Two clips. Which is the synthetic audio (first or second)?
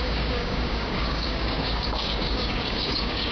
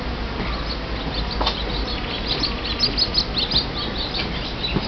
first